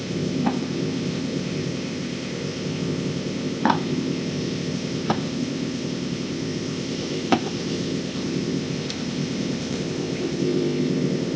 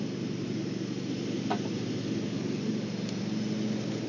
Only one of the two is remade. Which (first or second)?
first